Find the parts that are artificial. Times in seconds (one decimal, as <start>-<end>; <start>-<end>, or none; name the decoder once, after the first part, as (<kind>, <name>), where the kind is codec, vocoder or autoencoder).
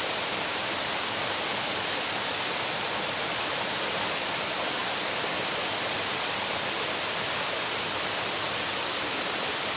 none